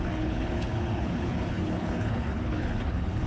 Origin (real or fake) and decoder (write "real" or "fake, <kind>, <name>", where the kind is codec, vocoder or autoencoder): fake, codec, HILCodec